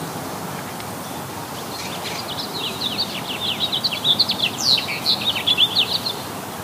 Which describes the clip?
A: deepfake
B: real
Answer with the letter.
B